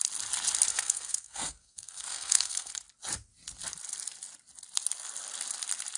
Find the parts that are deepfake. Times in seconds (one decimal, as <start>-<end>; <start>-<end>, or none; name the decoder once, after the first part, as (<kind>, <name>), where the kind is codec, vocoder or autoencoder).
0.7-2.7 (codec, SNAC)